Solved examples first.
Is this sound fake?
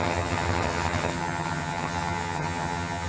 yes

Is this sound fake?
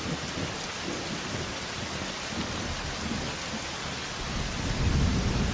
no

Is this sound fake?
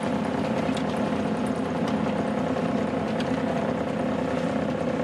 no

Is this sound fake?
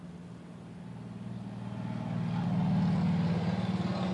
no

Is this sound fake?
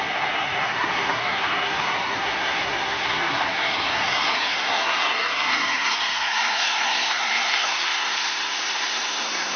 yes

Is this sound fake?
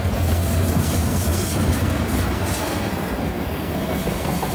yes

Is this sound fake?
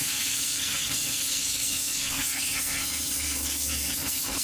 yes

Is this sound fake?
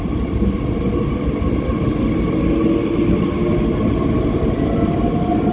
no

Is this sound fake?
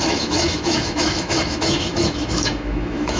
yes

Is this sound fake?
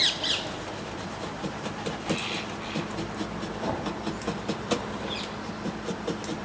yes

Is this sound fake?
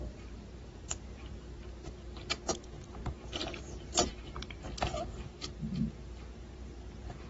yes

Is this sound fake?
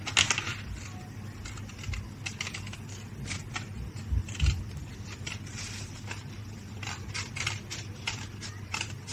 no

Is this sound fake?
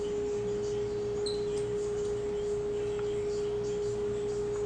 no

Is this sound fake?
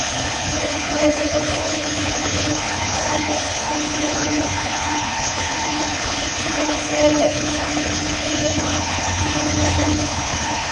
yes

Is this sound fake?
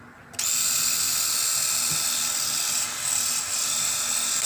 no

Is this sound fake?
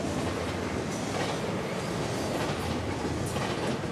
no